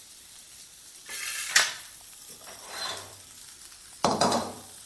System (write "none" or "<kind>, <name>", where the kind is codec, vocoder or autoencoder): vocoder, BigVGAN v2